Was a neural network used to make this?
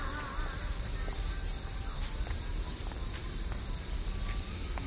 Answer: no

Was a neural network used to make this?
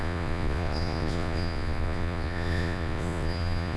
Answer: yes